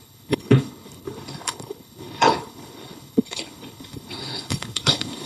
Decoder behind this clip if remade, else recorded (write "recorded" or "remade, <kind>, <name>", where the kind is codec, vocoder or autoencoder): remade, codec, HILCodec